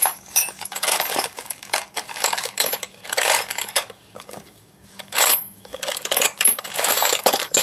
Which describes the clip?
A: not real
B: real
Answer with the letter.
A